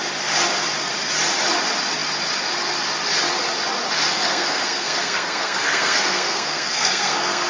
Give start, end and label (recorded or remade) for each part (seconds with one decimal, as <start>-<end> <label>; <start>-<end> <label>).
0.0-4.1 recorded; 4.1-7.5 remade